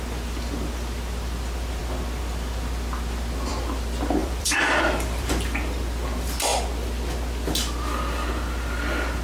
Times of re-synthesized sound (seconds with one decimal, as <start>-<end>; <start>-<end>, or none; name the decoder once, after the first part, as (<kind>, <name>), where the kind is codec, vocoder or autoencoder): 4.2-5.3 (vocoder, BigVGAN v2)